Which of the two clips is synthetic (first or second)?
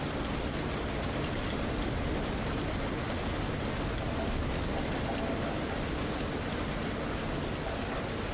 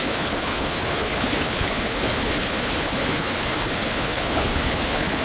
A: second